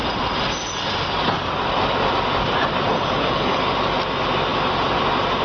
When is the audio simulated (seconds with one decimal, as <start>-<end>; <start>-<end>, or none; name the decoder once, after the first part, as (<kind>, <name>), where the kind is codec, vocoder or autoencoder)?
2.9-3.6 (codec, HILCodec)